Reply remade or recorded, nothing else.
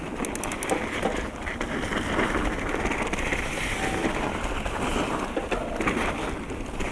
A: recorded